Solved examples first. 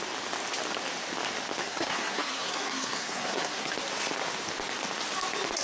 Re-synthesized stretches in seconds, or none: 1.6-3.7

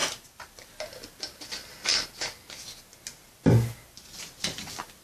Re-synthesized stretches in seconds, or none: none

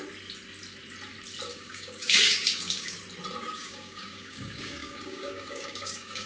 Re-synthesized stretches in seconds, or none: 1.5-3.0; 3.4-6.3

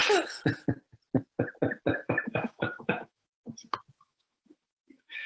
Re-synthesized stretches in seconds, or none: 1.9-3.4; 4.0-5.3